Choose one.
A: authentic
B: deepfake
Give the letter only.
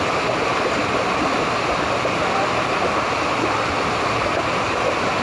A